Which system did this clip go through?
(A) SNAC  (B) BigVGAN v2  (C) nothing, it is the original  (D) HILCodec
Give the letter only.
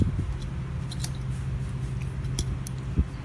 C